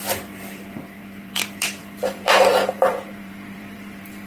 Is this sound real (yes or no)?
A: no